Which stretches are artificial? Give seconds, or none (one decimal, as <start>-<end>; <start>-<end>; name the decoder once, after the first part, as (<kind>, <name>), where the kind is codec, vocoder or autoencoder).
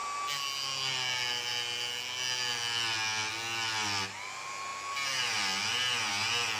none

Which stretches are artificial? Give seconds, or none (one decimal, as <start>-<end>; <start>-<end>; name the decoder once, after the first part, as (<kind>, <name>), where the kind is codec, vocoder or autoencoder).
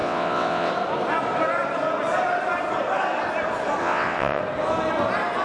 0.0-0.7 (vocoder, WaveNeXt); 3.8-4.4